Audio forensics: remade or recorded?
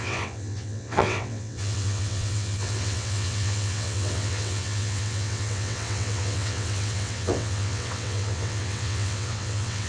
remade